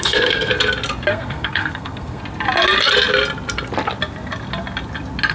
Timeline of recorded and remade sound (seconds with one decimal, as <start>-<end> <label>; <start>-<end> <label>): 0.0-0.5 remade; 0.5-1.1 recorded; 1.1-2.2 remade; 2.2-5.3 recorded